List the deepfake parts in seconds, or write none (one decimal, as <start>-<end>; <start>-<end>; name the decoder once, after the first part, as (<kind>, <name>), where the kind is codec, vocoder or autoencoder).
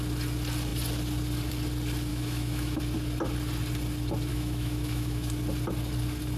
2.1-2.8 (autoencoder, DAC-VAE); 4.3-5.3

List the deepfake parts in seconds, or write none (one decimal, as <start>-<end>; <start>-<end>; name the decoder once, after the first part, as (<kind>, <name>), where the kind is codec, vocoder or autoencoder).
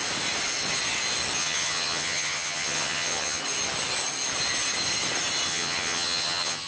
1.4-3.4 (vocoder, HiFi-GAN); 5.5-6.7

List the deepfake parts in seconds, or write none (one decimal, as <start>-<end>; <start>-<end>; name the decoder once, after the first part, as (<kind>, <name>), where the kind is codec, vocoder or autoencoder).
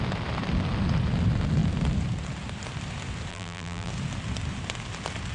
3.3-3.9 (vocoder, BigVGAN v2)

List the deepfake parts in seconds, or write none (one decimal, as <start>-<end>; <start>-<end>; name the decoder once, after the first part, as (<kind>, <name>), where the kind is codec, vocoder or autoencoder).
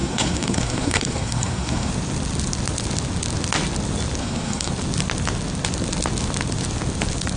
0.0-1.9 (codec, SNAC); 4.2-4.7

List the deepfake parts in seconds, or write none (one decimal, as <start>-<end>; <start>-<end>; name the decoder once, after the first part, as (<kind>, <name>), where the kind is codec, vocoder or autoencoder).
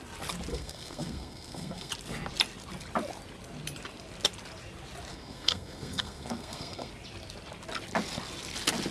0.5-1.9 (codec, SNAC); 5.1-6.9